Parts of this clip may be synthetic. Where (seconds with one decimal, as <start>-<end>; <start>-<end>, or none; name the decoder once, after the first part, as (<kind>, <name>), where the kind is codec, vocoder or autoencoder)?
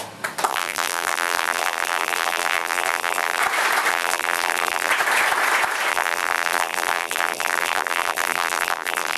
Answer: 0.5-3.4 (vocoder, BigVGAN v2); 3.9-4.9; 5.9-9.2